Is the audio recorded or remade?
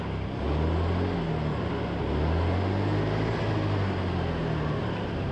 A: recorded